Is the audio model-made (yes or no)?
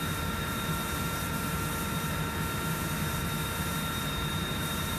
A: yes